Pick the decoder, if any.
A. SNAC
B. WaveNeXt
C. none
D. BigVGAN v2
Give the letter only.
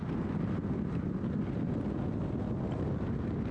C